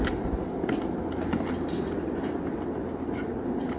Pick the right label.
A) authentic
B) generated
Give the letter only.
A